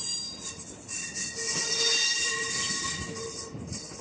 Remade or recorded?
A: recorded